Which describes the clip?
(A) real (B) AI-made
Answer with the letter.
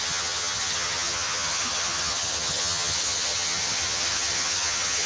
B